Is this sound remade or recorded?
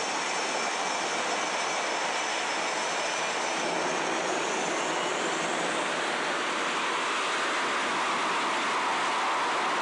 recorded